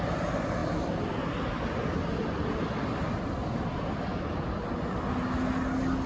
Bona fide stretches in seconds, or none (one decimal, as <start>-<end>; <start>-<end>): 0.0-6.1